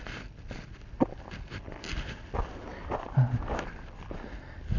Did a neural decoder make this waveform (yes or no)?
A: no